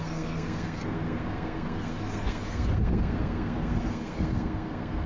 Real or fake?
fake